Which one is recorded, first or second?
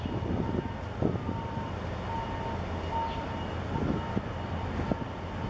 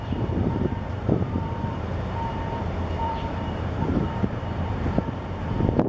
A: first